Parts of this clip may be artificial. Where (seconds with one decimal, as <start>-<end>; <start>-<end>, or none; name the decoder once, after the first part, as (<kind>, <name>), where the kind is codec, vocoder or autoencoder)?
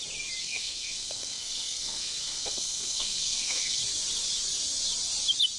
0.4-3.8 (codec, SNAC)